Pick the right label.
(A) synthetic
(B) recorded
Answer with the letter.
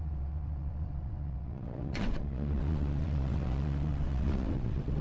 A